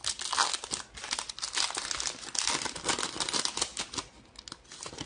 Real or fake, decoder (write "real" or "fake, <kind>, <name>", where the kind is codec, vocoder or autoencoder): real